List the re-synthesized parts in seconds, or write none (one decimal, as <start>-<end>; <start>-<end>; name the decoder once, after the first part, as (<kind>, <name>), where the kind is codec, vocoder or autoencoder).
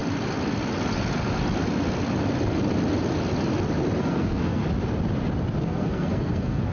4.0-4.6 (codec, SNAC); 5.6-6.7